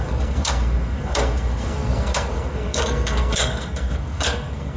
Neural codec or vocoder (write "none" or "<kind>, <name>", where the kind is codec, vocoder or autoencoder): codec, SNAC